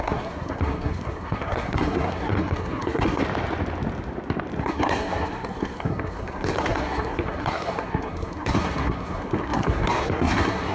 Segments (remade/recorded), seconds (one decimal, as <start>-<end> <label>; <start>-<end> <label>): 0.0-3.2 remade; 3.2-4.6 recorded; 4.6-10.7 remade